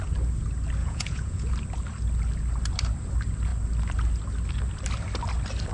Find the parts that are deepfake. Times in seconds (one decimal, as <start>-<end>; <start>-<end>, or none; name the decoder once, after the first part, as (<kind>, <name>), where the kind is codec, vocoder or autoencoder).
0.8-1.5 (vocoder, Vocos)